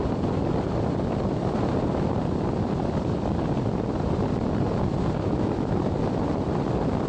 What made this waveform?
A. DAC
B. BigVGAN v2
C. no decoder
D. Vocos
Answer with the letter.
C